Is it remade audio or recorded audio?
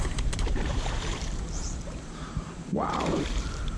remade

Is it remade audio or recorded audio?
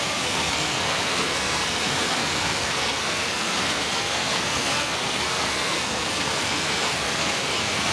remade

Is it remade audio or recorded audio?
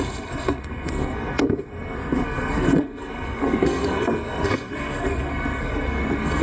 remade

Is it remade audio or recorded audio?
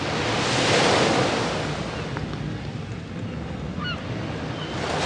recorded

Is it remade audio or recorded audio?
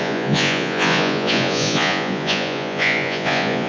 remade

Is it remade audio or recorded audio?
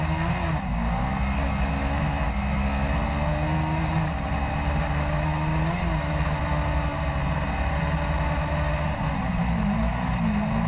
recorded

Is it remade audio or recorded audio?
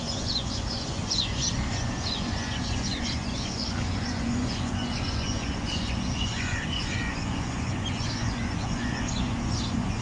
remade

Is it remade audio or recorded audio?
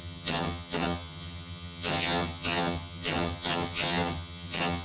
remade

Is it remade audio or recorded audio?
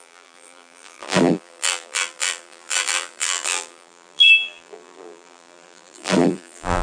remade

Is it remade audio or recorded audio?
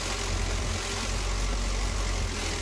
recorded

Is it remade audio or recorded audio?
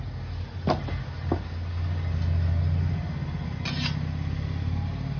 recorded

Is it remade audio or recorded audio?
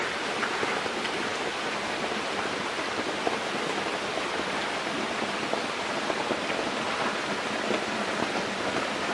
recorded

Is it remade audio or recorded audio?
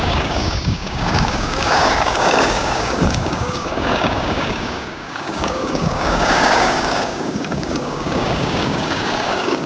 remade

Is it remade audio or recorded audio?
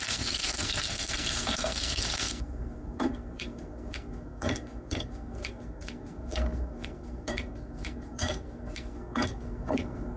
remade